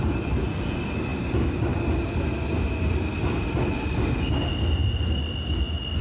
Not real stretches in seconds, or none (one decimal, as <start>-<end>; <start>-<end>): none